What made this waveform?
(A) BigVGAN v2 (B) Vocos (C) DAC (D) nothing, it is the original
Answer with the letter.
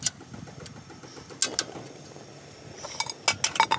D